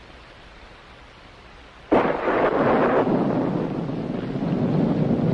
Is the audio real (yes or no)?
yes